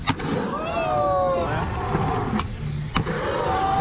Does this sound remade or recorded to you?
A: recorded